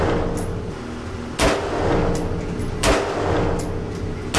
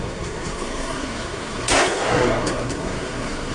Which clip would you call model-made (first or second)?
second